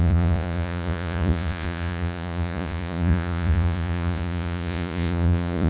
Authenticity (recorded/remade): remade